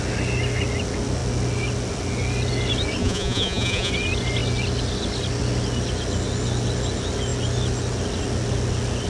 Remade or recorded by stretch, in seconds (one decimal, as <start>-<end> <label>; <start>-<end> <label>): 0.0-3.0 recorded; 3.0-3.9 remade; 3.9-9.1 recorded